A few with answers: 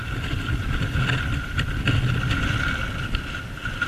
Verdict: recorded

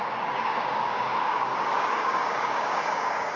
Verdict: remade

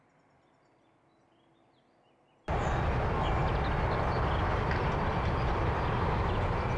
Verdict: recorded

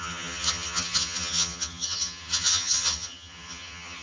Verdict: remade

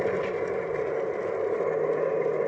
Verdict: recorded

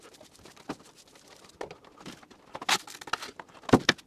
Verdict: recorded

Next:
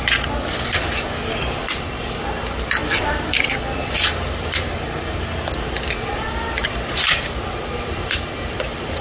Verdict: remade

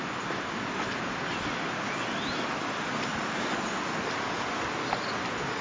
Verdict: recorded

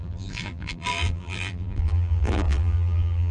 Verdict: remade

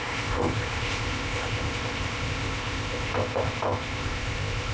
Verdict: remade